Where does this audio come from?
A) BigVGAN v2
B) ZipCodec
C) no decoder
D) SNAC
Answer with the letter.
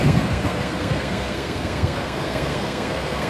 D